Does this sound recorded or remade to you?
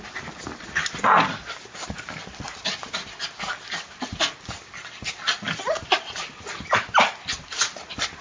recorded